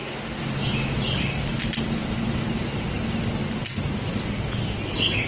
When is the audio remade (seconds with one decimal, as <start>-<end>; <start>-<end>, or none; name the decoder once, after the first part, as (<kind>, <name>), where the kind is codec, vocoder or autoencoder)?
1.5-2.2 (vocoder, BigVGAN v2); 3.4-4.2